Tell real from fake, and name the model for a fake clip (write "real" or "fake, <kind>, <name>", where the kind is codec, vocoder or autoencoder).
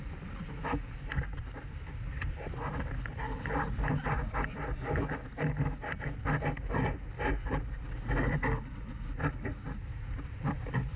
real